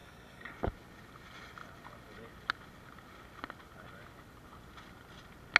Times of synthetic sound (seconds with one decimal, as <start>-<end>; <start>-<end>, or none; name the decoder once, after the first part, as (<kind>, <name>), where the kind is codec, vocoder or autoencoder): 0.0-0.5 (codec, DAC)